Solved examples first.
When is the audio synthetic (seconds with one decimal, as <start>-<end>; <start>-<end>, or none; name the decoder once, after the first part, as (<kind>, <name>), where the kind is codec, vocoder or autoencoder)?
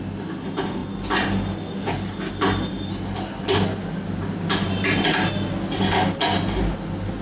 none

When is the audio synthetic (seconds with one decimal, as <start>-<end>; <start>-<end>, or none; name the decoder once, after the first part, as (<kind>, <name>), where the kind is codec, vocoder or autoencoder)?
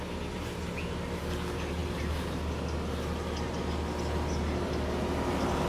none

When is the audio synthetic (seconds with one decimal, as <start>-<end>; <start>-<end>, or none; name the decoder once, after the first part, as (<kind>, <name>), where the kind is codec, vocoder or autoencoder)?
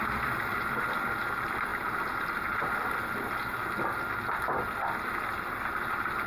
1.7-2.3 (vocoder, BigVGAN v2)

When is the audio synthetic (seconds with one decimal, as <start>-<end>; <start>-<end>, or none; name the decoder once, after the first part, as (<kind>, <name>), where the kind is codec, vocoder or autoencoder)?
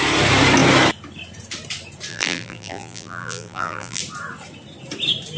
2.1-4.0 (vocoder, BigVGAN v2)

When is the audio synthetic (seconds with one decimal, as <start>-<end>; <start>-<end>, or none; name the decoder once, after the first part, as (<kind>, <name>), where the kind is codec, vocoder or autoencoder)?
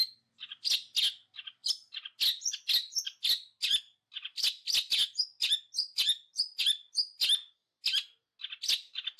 none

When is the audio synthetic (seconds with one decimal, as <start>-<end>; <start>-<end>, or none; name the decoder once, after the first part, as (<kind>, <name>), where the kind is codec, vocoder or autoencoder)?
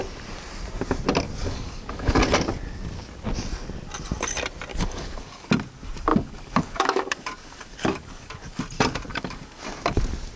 1.4-2.2 (codec, DAC); 4.7-5.5; 6.1-8.6; 9.1-9.6